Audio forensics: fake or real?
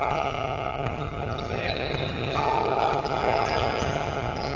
fake